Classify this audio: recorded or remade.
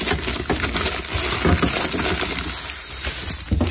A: recorded